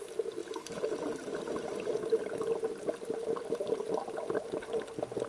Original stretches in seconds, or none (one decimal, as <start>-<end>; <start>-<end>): 0.0-5.3